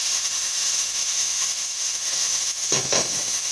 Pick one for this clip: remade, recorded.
remade